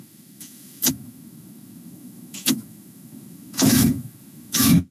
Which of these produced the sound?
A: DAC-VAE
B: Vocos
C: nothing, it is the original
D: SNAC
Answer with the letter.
A